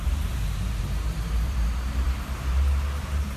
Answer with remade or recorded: remade